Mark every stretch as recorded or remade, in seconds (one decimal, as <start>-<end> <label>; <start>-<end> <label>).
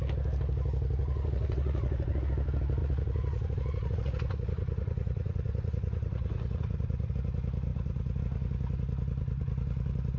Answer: 0.0-1.0 recorded; 1.0-2.3 remade; 2.3-2.8 recorded; 2.8-7.1 remade; 7.1-10.2 recorded